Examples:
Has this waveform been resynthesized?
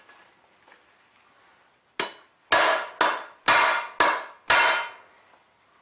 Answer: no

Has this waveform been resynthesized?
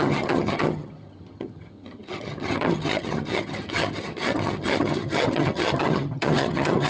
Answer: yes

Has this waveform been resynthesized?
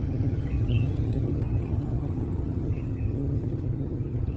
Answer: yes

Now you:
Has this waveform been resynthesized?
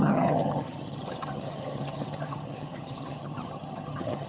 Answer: yes